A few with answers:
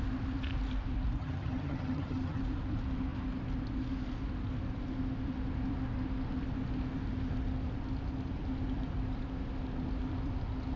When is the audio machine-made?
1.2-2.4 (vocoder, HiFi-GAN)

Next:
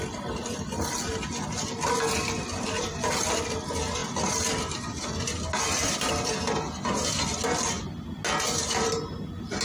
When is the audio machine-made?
none

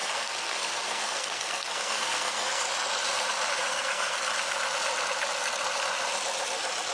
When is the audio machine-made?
0.0-2.7 (codec, SNAC); 3.6-4.3

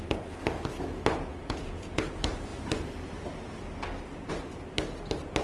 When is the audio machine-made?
1.3-2.1 (vocoder, Vocos)

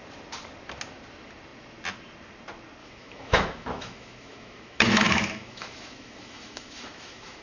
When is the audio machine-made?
2.8-7.4 (autoencoder, DAC-VAE)

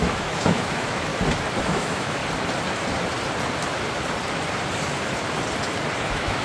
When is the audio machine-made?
0.0-1.1 (autoencoder, DAC-VAE); 1.6-2.2; 6.0-6.4

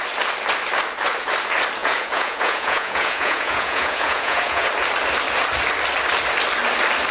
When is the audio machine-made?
1.8-4.7 (vocoder, Vocos)

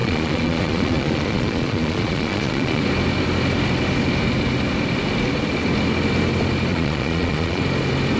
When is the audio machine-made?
0.0-2.8 (vocoder, Vocos); 6.7-7.6